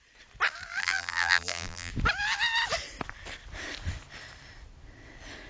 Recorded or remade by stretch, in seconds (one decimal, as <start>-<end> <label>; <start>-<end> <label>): 0.0-0.8 recorded; 0.8-1.9 remade; 1.9-5.5 recorded